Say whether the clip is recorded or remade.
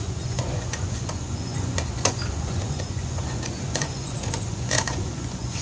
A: remade